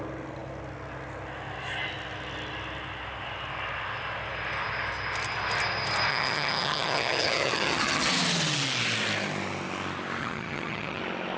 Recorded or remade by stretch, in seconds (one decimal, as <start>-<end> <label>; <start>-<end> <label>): 0.0-6.1 recorded; 6.1-8.1 remade; 8.1-10.2 recorded; 10.2-11.0 remade; 11.0-11.4 recorded